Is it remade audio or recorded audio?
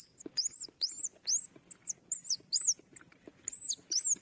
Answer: recorded